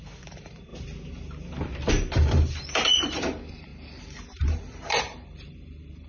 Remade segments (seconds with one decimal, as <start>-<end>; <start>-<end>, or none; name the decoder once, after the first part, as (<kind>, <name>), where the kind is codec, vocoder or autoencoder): 0.0-0.7 (vocoder, BigVGAN v2); 1.9-6.1